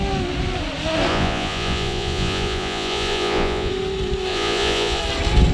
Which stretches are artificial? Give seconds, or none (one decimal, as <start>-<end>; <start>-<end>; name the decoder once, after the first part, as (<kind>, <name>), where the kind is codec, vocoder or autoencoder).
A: 1.1-3.7 (vocoder, Vocos); 4.3-5.0